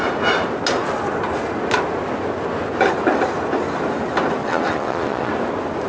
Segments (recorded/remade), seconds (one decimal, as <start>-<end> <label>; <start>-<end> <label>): 0.0-4.4 recorded; 4.4-5.3 remade; 5.3-5.9 recorded